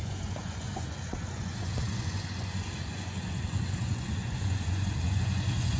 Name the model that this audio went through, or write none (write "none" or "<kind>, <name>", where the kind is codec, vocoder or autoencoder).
vocoder, Vocos